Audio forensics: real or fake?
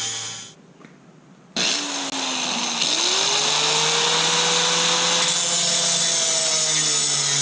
real